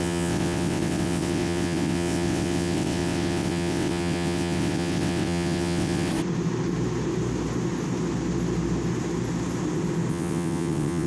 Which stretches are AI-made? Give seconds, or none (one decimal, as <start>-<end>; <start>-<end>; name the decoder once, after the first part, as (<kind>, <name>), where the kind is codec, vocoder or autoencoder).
0.0-6.1 (vocoder, WaveNeXt); 10.1-11.1